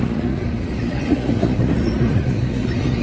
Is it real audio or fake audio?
fake